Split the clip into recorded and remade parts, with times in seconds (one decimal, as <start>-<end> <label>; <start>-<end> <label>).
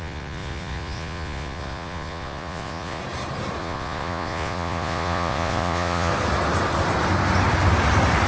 0.0-3.0 remade; 3.0-3.6 recorded; 3.6-6.1 remade; 6.1-8.3 recorded